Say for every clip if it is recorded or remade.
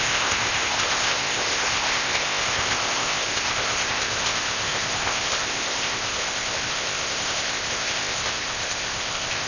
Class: remade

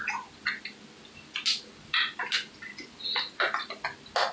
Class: recorded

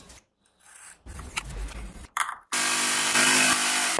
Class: remade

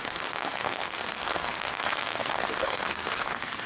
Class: remade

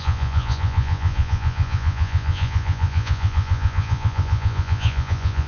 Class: remade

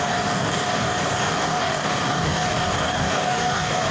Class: remade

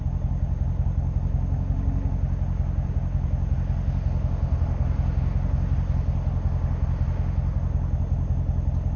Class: recorded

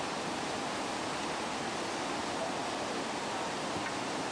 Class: recorded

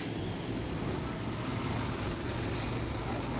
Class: recorded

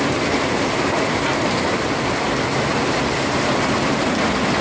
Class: recorded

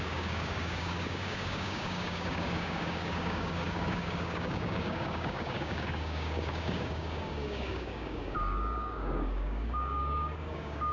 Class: remade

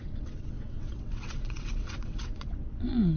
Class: remade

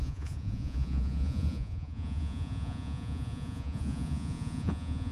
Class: remade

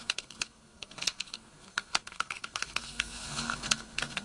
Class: remade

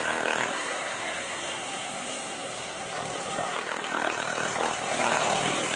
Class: remade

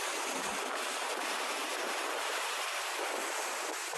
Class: remade